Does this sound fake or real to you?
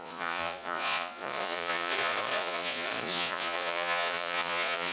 fake